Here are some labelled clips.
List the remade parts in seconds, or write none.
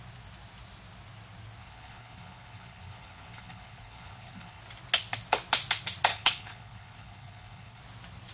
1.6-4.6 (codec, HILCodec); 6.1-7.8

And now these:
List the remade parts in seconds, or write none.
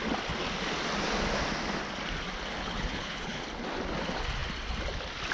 2.6-3.4 (codec, HILCodec)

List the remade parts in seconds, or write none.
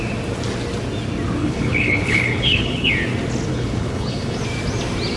1.4-2.9 (codec, HILCodec); 3.5-4.4